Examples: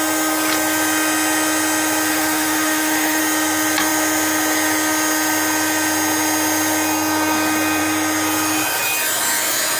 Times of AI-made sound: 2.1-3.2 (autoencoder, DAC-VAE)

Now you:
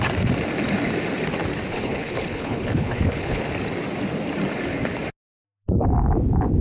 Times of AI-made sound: 1.7-3.4 (codec, HILCodec)

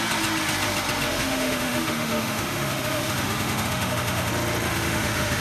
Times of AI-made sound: 1.1-4.3 (autoencoder, DAC-VAE); 4.7-5.4

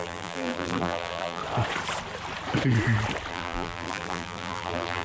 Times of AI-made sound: 0.0-1.4 (vocoder, BigVGAN v2); 3.3-5.0

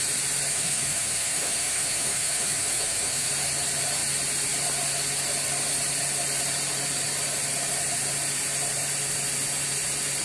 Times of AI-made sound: 0.5-3.3 (autoencoder, DAC-VAE)

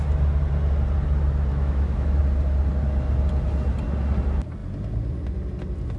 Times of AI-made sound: 1.5-2.2 (autoencoder, DAC-VAE)

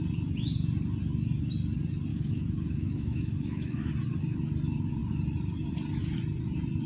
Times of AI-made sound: 2.1-3.9 (autoencoder, DAC-VAE)

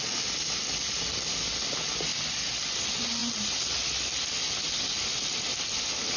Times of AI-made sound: none